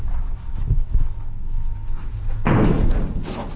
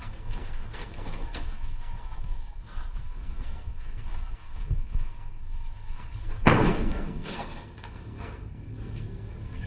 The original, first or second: first